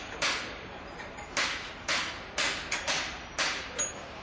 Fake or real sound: real